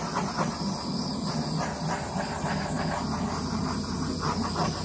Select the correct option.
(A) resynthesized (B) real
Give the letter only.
B